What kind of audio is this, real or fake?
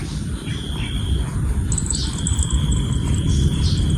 real